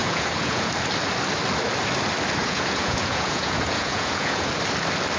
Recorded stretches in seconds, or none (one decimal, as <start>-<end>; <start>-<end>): 0.7-2.4; 4.5-5.2